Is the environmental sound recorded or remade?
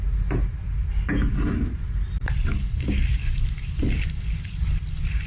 recorded